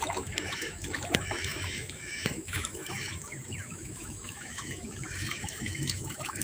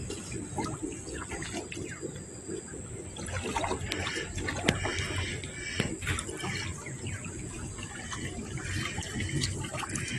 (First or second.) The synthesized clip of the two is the first